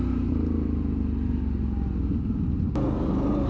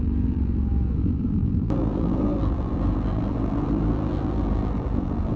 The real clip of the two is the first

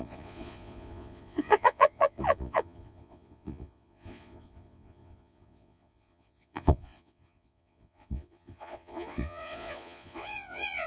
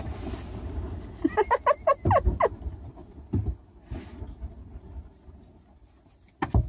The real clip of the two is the second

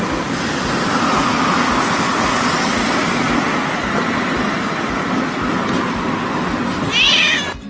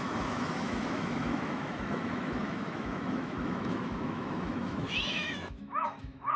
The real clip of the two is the first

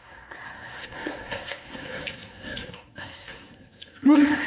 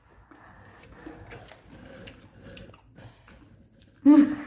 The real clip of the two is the second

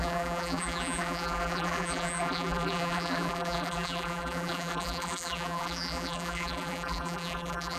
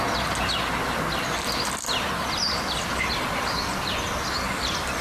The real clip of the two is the second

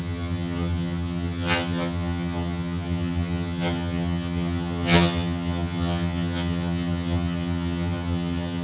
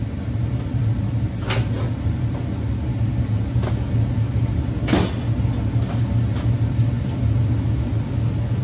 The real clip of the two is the second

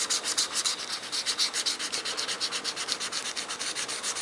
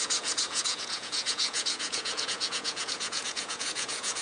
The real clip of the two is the first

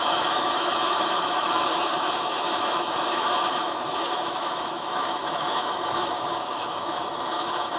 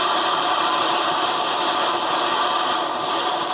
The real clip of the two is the second